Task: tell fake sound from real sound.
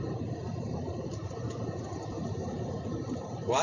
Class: real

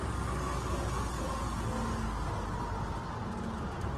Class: real